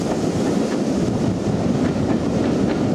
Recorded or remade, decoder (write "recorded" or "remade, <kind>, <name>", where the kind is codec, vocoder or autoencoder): recorded